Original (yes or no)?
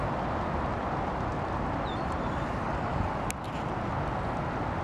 yes